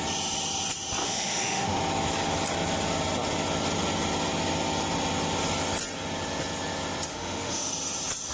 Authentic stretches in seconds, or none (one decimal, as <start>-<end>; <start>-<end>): 0.0-1.0; 1.8-7.1; 7.7-8.3